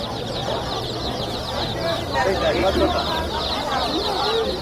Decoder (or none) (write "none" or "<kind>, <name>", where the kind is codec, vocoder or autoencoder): none